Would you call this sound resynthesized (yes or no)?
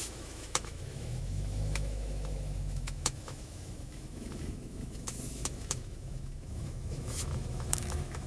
yes